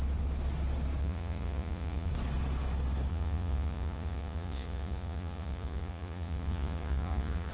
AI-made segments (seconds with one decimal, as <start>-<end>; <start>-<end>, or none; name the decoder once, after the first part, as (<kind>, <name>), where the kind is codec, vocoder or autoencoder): 1.0-2.1 (vocoder, Vocos); 3.1-7.5